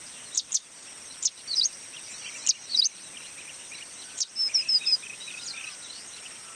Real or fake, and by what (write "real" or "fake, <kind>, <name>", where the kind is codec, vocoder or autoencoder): real